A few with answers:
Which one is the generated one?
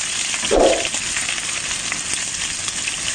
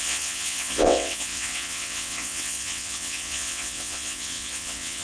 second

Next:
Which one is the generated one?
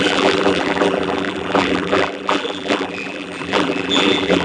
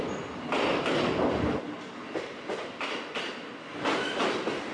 first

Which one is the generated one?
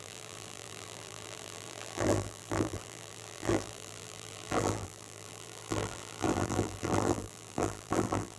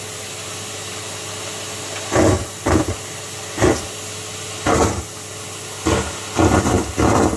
first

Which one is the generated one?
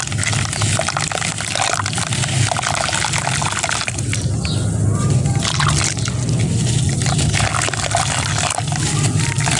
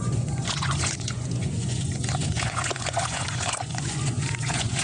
second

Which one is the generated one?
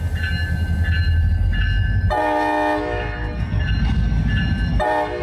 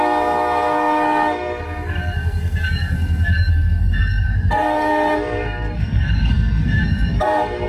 second